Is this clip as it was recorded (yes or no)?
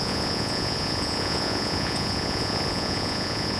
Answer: no